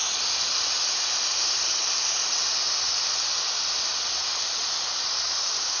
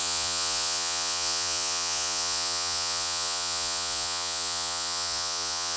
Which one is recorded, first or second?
first